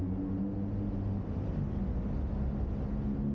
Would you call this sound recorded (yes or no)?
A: yes